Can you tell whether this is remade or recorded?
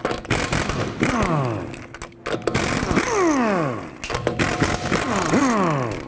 recorded